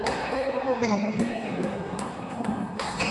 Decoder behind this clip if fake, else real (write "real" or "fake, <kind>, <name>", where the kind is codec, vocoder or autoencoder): fake, codec, SNAC